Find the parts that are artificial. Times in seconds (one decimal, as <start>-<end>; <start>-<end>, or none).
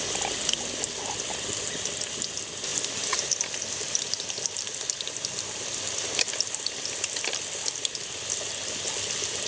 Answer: none